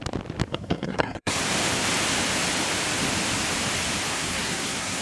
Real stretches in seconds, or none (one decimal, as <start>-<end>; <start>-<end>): 0.0-0.5; 1.4-4.1